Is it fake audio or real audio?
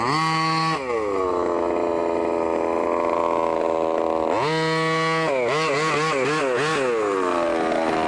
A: real